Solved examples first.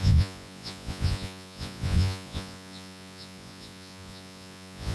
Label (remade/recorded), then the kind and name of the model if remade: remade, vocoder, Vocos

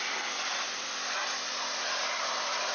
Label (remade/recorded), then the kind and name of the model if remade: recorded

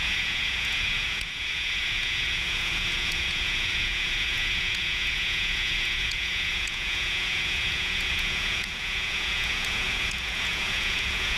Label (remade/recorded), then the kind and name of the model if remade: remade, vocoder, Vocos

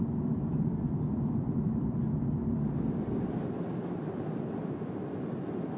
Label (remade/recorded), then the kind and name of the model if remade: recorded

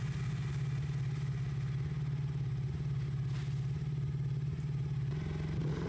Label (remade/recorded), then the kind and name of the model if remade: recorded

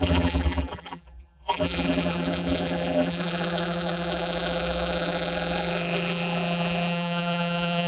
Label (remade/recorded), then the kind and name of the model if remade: remade, vocoder, BigVGAN v2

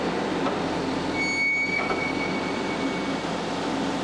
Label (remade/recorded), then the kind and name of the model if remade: recorded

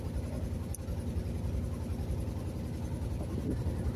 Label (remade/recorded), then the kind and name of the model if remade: recorded